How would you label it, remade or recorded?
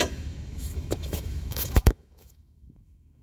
remade